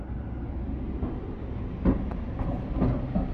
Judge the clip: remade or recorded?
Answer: recorded